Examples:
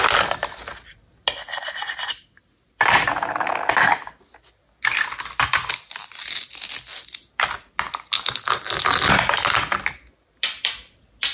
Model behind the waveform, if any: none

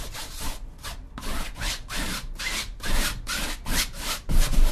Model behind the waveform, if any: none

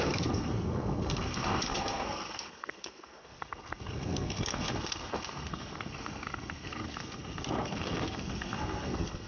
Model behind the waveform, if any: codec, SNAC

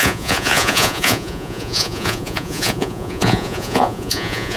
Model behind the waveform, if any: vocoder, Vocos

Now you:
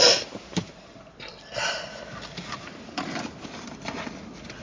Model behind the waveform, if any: vocoder, BigVGAN v2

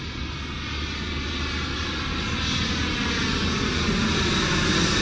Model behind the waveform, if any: none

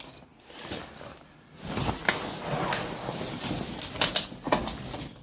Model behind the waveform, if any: none